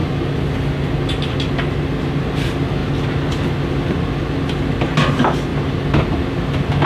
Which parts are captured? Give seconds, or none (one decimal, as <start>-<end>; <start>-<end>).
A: 0.0-6.9